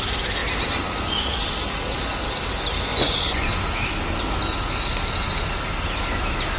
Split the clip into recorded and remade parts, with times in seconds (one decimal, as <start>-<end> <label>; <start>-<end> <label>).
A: 0.0-2.9 recorded; 2.9-3.5 remade; 3.5-6.6 recorded